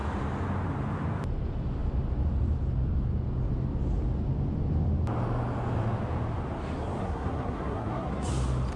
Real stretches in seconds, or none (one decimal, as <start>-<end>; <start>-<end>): 0.0-7.0; 8.3-8.8